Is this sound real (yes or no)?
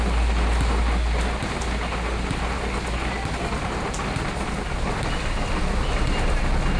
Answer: yes